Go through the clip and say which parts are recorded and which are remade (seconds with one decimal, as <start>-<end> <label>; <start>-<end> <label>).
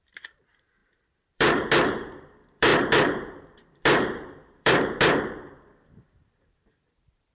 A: 0.0-7.3 remade